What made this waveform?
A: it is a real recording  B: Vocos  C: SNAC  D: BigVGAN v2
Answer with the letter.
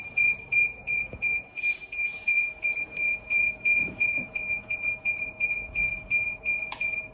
B